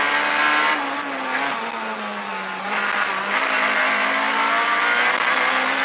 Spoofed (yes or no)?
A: no